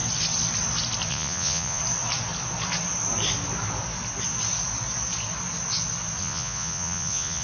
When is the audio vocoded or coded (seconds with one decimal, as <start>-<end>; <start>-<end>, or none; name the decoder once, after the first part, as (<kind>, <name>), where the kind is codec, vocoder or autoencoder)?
1.1-1.8 (vocoder, Vocos); 6.2-7.4